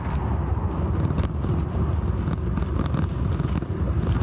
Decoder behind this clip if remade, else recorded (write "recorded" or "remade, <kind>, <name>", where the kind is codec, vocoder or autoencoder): recorded